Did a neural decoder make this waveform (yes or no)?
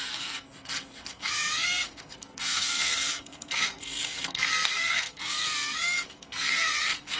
yes